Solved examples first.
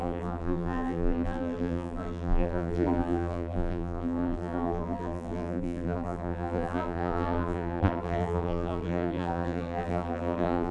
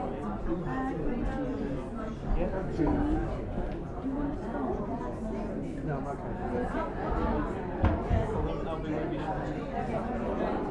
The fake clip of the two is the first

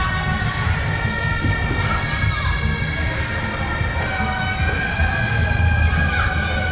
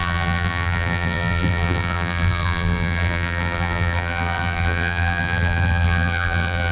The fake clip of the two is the second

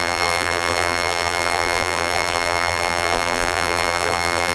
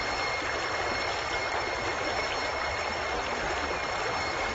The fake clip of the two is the first